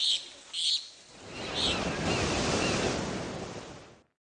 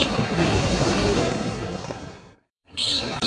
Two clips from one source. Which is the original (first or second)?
first